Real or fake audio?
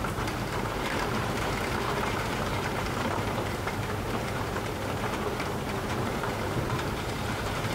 fake